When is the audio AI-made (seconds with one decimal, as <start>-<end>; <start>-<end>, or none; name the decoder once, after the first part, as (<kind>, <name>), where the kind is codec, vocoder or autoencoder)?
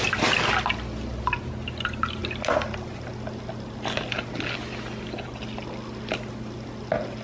none